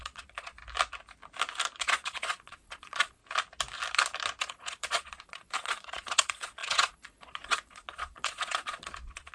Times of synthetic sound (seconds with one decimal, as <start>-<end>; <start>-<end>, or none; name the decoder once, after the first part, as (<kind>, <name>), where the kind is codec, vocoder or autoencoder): 0.0-0.6 (vocoder, Vocos); 1.8-3.2; 4.4-9.3